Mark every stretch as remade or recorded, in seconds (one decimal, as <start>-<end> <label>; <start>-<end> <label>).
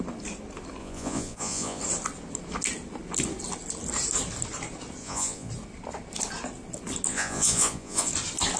0.0-0.8 recorded; 0.8-1.8 remade; 1.8-5.0 recorded; 5.0-5.5 remade; 5.5-7.1 recorded; 7.1-8.1 remade; 8.1-8.6 recorded